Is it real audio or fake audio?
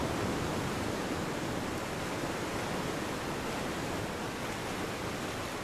real